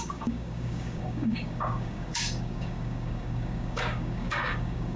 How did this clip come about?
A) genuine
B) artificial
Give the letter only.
B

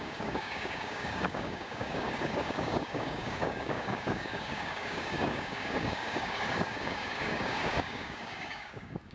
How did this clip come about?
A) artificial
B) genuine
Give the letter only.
A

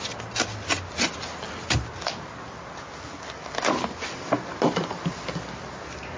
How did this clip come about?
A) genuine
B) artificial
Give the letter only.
A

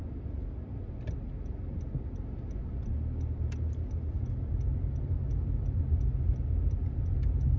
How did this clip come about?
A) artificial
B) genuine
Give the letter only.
B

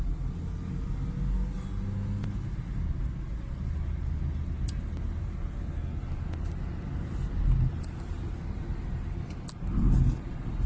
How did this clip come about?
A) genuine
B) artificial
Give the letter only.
A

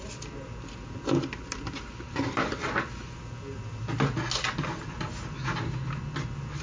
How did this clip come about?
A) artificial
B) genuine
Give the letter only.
B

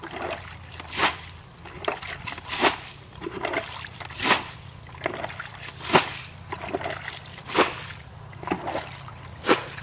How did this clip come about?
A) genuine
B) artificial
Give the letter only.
A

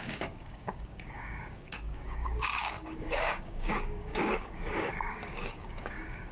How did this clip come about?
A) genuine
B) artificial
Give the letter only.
B